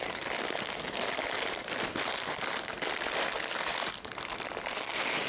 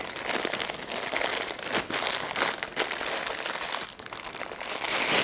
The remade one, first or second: first